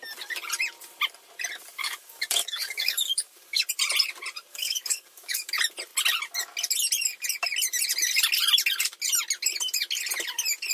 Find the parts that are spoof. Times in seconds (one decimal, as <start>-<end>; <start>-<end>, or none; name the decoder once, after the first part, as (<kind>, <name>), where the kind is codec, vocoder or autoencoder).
1.8-3.6 (codec, DAC); 4.5-5.5